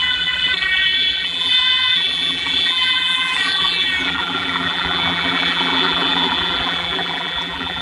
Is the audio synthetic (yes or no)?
yes